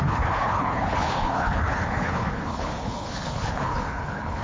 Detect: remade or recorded remade